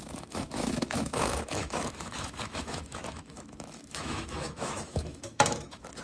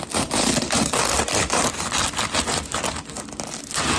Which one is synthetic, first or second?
first